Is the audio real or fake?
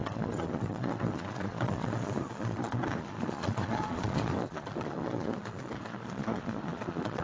fake